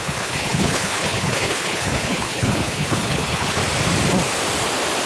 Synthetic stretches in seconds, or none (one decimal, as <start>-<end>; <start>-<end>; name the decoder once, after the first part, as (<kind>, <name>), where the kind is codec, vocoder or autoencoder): 0.0-3.6 (codec, HILCodec)